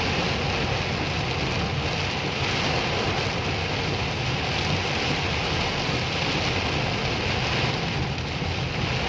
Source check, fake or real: real